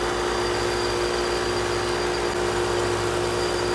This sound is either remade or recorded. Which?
recorded